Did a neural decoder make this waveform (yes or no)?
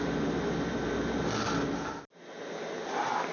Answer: no